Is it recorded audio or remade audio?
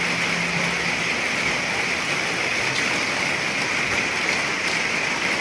recorded